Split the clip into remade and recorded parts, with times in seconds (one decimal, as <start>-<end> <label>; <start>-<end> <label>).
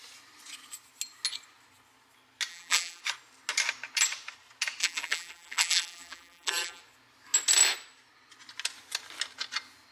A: 0.0-2.5 recorded; 2.5-3.0 remade; 3.0-4.8 recorded; 4.8-6.8 remade; 6.8-9.9 recorded